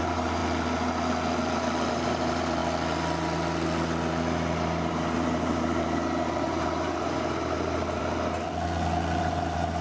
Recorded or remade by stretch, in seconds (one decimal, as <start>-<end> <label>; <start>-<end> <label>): 0.0-0.4 remade; 0.4-1.9 recorded; 1.9-2.6 remade; 2.6-4.9 recorded; 4.9-8.0 remade; 8.0-9.2 recorded; 9.2-9.8 remade